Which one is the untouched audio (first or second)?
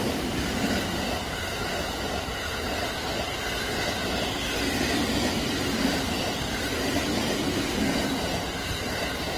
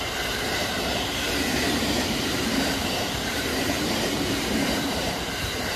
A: first